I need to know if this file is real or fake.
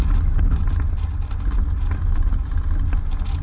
real